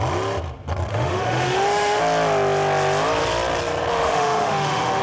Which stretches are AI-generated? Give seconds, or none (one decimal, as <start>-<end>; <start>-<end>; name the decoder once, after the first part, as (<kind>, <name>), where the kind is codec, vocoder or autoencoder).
0.9-2.0 (autoencoder, DAC-VAE); 3.9-5.0